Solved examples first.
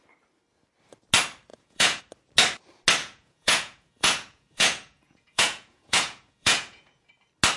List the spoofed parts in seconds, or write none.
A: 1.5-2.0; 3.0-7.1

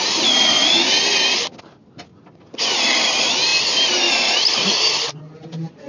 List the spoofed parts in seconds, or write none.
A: none

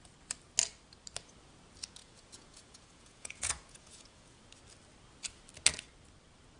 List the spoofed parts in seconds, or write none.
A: 2.0-4.4

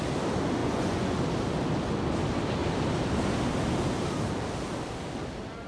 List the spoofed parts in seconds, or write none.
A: 0.6-1.2

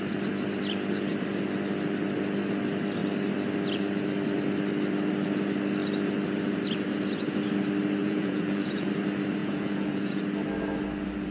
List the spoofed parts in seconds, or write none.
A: 8.0-8.9; 9.4-10.2